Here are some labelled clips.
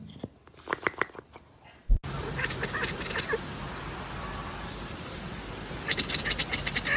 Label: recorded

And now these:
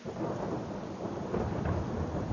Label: recorded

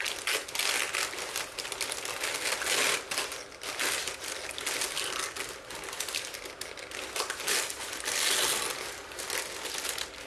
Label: recorded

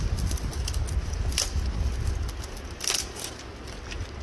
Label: recorded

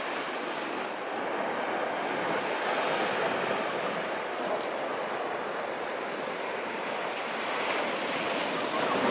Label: recorded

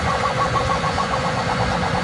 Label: remade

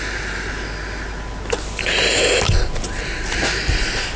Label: recorded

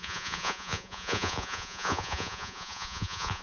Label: remade